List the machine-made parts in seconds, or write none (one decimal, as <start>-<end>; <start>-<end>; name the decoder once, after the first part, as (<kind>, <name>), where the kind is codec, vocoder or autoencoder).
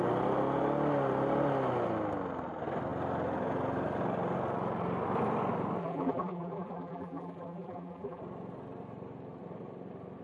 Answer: 5.8-8.2 (vocoder, BigVGAN v2)